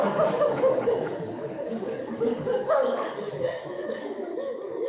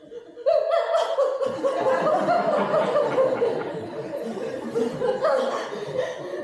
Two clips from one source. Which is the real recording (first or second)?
second